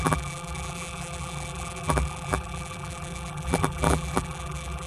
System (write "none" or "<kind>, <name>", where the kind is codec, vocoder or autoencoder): vocoder, BigVGAN v2